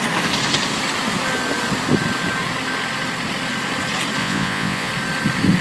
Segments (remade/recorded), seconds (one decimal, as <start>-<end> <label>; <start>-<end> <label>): 0.0-4.2 recorded; 4.2-4.9 remade; 4.9-5.6 recorded

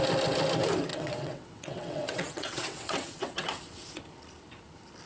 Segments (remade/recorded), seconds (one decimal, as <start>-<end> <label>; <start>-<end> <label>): 0.0-0.9 recorded; 0.9-4.0 remade; 4.0-5.1 recorded

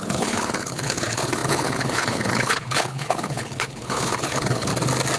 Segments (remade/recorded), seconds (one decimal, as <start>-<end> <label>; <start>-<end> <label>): 0.0-4.7 remade; 4.7-5.2 recorded

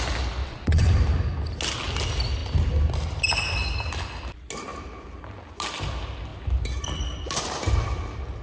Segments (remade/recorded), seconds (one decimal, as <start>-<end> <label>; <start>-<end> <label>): 0.0-0.4 recorded; 0.4-0.9 remade; 0.9-8.4 recorded

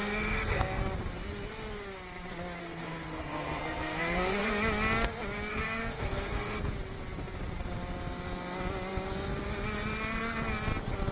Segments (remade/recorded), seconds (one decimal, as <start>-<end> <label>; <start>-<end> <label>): 0.0-0.8 remade; 0.8-2.6 recorded; 2.6-4.5 remade; 4.5-5.5 recorded; 5.5-6.6 remade; 6.6-11.1 recorded